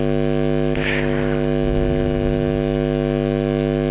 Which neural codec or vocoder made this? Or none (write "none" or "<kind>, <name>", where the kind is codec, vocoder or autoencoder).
autoencoder, DAC-VAE